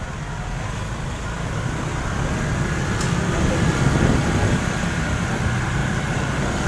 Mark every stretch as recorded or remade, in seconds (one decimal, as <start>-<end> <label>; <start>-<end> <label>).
0.0-5.8 recorded; 5.8-6.7 remade

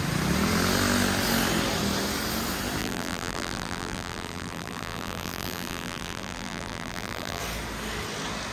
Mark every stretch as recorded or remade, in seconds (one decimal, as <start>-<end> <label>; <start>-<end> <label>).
0.0-2.8 recorded; 2.8-7.4 remade; 7.4-8.5 recorded

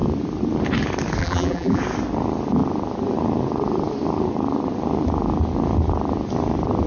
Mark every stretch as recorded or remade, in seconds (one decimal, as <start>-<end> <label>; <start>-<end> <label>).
0.0-1.2 recorded; 1.2-1.8 remade; 1.8-6.9 recorded